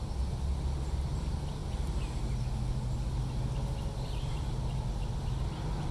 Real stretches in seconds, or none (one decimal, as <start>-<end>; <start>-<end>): 0.0-5.9